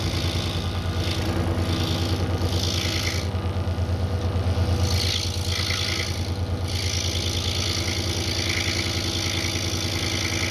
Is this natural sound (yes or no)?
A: yes